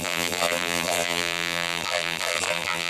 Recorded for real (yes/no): no